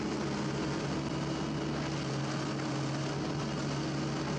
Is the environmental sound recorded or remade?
recorded